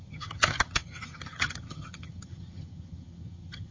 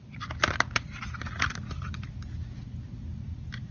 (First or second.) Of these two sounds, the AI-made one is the first